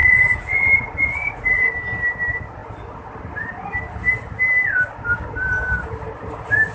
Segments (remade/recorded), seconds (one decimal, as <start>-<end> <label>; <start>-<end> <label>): 0.0-1.7 remade; 1.7-6.7 recorded